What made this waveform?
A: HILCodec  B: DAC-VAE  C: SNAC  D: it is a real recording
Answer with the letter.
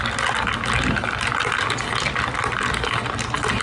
D